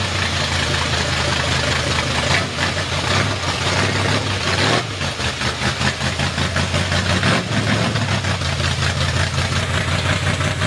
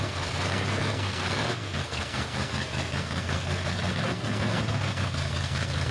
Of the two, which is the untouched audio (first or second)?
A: first